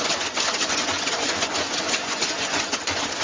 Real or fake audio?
fake